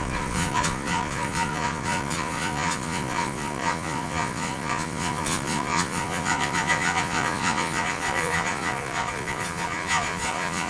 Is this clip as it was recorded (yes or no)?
no